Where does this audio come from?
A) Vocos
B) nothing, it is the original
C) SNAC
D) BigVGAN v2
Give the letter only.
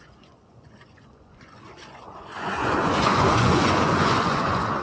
A